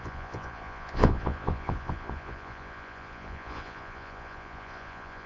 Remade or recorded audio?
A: remade